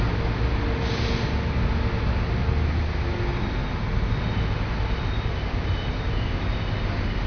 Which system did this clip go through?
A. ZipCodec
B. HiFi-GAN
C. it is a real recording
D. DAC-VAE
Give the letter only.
C